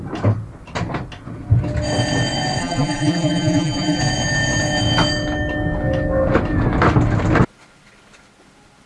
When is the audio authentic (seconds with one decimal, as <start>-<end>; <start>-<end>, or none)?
0.0-2.6; 4.0-8.9